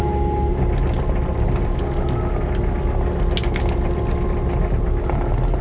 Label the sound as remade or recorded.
recorded